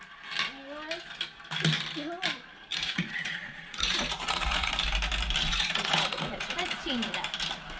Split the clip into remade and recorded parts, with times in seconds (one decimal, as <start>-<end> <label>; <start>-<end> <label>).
0.0-2.7 recorded; 2.7-4.7 remade; 4.7-5.4 recorded; 5.4-7.1 remade; 7.1-7.8 recorded